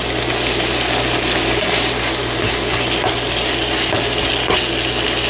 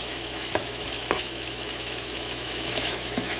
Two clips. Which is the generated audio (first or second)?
second